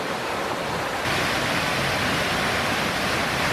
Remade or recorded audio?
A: recorded